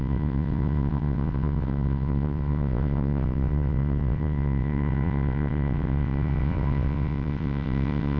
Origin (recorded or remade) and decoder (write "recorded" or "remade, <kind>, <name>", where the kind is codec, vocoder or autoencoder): remade, vocoder, WaveNeXt